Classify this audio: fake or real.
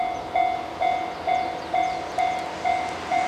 real